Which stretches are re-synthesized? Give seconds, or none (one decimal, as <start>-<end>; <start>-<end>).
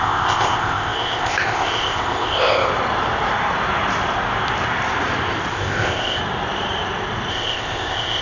0.0-2.7; 5.5-6.2; 7.3-8.2